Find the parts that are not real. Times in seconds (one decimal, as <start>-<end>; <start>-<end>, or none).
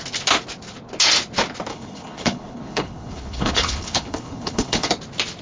1.7-4.9